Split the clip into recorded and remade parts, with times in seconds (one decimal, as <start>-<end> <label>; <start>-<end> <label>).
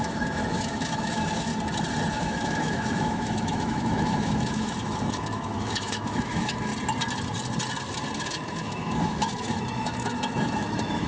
0.0-1.5 remade; 1.5-2.1 recorded; 2.1-6.7 remade; 6.7-8.2 recorded; 8.2-11.1 remade